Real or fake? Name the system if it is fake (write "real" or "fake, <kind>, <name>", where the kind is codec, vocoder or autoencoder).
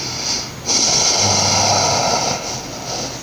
real